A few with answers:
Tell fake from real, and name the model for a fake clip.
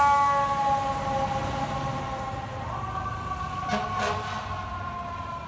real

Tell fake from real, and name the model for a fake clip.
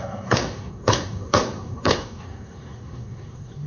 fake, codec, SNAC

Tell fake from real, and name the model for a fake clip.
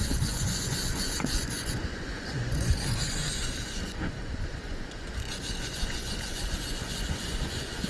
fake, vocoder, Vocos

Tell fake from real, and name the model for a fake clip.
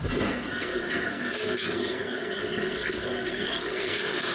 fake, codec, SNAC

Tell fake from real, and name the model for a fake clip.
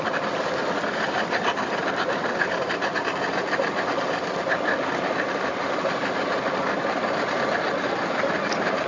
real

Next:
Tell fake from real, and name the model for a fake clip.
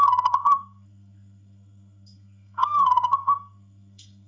fake, codec, SNAC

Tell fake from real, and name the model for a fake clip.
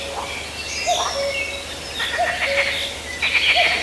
real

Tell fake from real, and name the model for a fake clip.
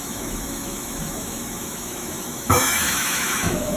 fake, autoencoder, DAC-VAE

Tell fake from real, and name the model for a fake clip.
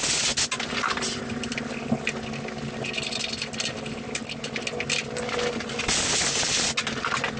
real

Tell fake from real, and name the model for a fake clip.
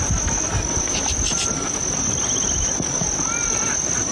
real